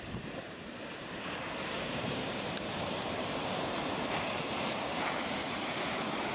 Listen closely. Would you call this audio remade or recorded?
remade